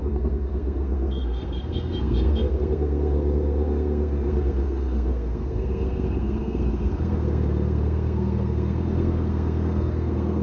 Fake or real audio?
fake